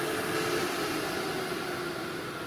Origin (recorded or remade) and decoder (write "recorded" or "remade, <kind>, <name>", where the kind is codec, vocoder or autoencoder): recorded